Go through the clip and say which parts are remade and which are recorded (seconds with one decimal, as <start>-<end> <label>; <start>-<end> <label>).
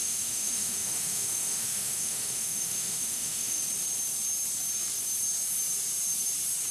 0.0-3.6 remade; 3.6-6.7 recorded